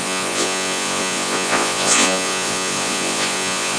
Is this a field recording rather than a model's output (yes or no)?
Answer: no